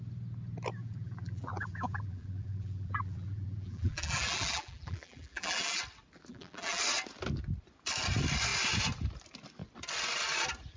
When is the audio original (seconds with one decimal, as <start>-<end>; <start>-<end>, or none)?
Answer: 0.0-0.8; 5.8-6.3; 6.8-10.8